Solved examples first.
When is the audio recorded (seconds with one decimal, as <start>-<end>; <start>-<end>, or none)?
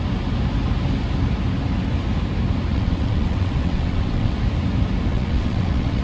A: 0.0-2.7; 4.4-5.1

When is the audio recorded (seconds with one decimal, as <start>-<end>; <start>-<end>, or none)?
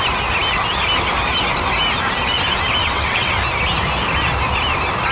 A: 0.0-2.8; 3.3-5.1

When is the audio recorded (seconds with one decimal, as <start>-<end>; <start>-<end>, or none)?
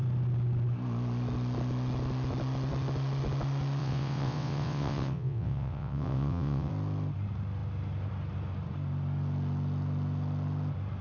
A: 0.0-3.8; 6.7-11.0